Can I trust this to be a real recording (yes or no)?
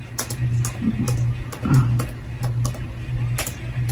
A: yes